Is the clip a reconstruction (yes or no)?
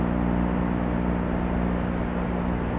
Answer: no